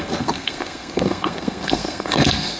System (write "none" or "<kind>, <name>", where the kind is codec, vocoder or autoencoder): codec, SNAC